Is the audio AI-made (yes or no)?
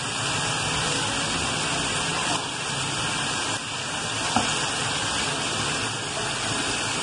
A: yes